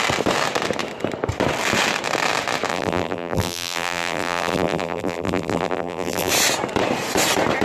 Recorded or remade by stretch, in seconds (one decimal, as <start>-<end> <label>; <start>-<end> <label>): 0.0-2.7 recorded; 2.7-6.3 remade; 6.3-7.6 recorded

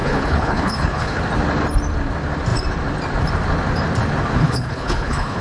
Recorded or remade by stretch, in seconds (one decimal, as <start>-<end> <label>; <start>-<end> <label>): 0.0-1.2 remade; 1.2-4.4 recorded; 4.4-5.4 remade

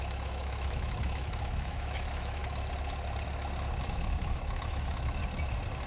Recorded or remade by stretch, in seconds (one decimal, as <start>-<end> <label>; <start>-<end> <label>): 0.0-2.4 remade; 2.4-3.8 recorded; 3.8-5.2 remade; 5.2-5.9 recorded

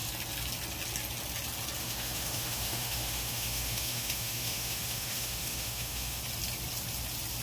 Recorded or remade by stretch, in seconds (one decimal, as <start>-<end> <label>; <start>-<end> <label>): 0.0-1.8 recorded; 1.8-6.2 remade; 6.2-7.4 recorded

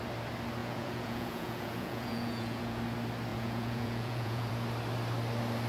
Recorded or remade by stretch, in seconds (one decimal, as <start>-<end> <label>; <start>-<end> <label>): 0.0-0.6 recorded; 0.6-2.8 remade; 2.8-3.3 recorded; 3.3-4.5 remade; 4.5-5.7 recorded

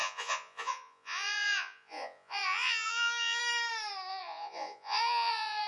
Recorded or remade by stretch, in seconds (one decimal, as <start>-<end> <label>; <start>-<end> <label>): 0.0-3.4 remade; 3.4-4.1 recorded; 4.1-5.7 remade

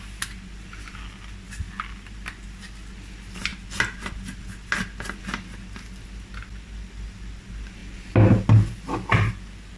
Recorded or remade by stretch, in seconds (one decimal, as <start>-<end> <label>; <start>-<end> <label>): 0.0-9.8 recorded